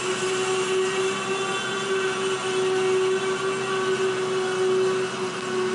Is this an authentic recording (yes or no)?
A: yes